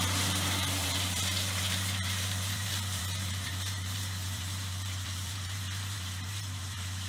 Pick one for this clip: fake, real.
fake